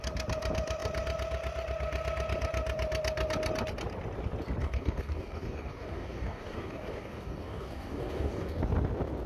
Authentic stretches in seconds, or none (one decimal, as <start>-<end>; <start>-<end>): 0.0-4.6; 8.6-9.3